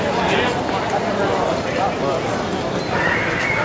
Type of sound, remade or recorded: recorded